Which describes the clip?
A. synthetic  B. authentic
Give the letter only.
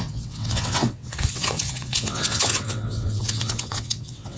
A